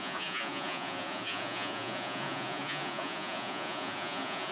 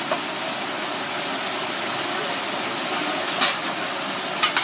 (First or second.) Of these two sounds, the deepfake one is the first